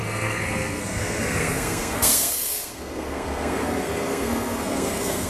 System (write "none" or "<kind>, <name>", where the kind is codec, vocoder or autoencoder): codec, SNAC